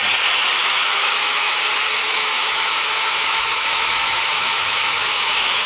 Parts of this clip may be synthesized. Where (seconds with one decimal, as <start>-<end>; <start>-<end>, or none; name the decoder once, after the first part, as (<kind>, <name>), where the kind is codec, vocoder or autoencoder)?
0.6-1.6 (autoencoder, DAC-VAE); 2.1-5.7